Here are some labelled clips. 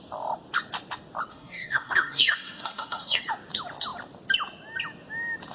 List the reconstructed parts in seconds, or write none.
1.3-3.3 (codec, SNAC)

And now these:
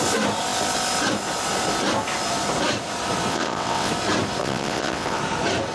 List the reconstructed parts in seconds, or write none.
3.3-3.9 (vocoder, WaveNeXt); 4.4-5.2

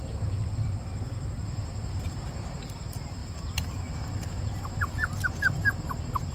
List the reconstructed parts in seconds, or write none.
none

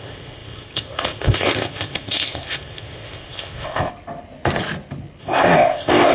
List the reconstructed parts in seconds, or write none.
0.0-3.9 (codec, ZipCodec); 5.2-6.1

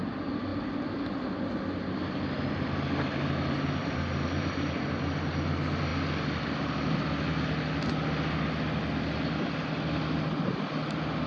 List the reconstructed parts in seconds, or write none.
3.8-5.3 (vocoder, BigVGAN v2)

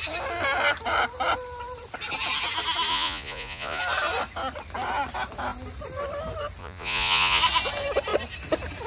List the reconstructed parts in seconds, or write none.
2.9-3.8 (vocoder, Vocos); 6.6-7.4